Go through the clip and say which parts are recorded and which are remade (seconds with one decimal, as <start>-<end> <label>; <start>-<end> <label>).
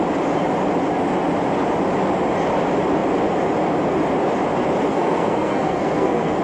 0.0-4.9 recorded; 4.9-6.4 remade